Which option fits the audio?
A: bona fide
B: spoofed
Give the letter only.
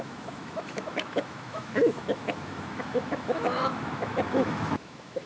B